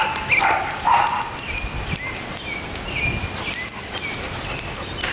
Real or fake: real